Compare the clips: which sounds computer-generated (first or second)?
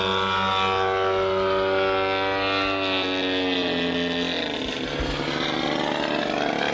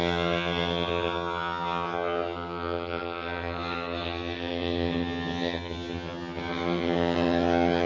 second